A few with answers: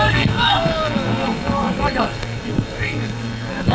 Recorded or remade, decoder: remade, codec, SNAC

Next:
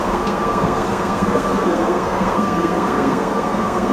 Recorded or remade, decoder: remade, codec, SNAC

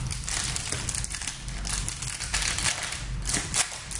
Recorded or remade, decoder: recorded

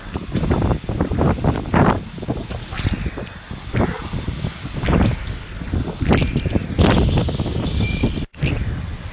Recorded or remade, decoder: recorded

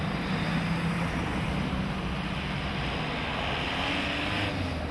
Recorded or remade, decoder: recorded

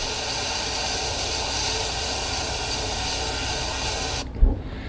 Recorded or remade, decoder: recorded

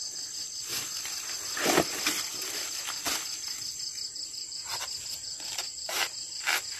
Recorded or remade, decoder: recorded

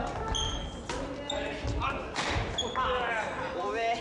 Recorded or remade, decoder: recorded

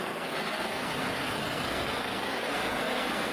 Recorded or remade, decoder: remade, codec, SNAC